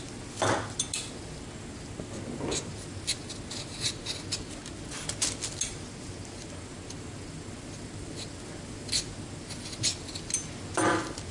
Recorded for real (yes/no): yes